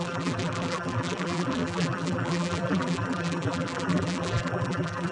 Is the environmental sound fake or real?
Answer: fake